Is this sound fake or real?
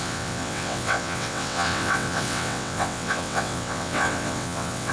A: fake